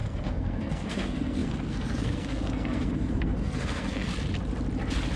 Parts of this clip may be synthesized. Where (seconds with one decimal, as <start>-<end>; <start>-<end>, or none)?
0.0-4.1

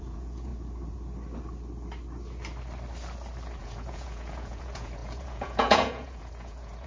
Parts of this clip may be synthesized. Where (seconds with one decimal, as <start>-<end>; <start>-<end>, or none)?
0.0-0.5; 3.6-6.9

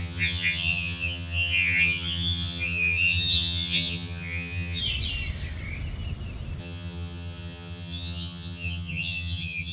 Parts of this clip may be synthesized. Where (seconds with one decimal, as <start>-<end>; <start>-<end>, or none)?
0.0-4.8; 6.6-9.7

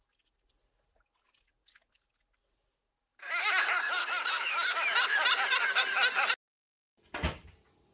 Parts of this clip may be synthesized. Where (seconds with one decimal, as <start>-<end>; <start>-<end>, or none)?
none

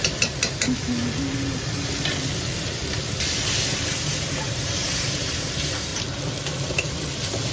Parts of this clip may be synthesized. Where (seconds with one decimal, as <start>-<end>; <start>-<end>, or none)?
4.2-5.9